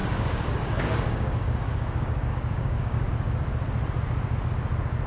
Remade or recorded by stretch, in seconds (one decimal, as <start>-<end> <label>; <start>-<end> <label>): 0.0-3.1 remade; 3.1-5.1 recorded